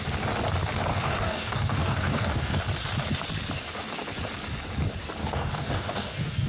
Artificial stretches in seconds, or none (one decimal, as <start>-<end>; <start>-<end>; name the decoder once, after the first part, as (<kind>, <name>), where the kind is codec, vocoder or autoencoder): 0.9-2.6 (codec, DAC); 5.2-6.5